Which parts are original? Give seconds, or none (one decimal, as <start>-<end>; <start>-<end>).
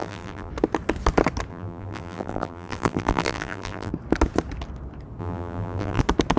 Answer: 0.5-1.5; 3.9-5.2; 6.0-6.4